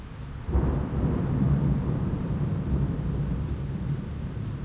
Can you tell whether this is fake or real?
fake